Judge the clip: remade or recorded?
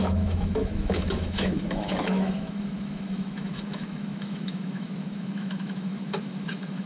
remade